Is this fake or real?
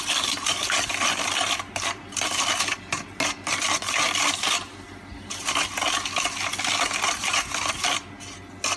real